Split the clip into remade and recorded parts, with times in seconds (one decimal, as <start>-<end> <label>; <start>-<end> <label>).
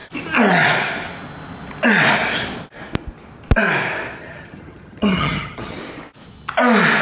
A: 0.0-4.2 recorded; 4.2-5.8 remade; 5.8-7.0 recorded